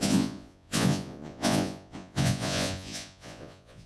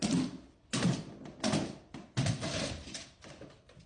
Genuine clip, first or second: second